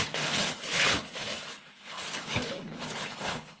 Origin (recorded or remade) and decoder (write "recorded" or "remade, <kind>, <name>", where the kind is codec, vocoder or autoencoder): remade, codec, HILCodec